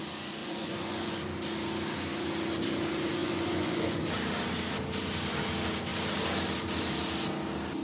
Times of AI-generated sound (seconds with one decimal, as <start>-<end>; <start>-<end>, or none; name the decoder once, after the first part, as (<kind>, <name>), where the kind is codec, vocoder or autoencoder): 0.4-1.2 (vocoder, Vocos); 3.2-4.0